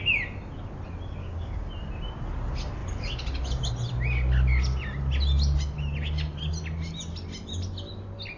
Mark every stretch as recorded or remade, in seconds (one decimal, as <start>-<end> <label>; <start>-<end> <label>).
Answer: 0.0-1.2 recorded; 1.2-1.7 remade; 1.7-8.4 recorded